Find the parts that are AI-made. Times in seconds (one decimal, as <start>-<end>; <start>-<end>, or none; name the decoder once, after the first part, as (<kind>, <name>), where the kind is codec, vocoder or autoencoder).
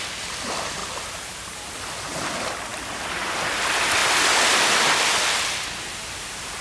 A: 2.7-3.4 (vocoder, BigVGAN v2); 4.0-5.7